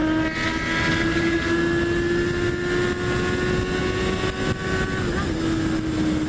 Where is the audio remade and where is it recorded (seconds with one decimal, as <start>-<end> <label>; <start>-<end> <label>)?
0.0-6.3 recorded